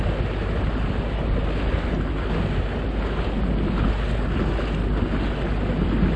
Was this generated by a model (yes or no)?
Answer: no